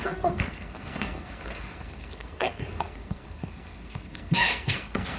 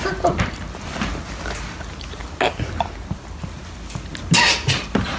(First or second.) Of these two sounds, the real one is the second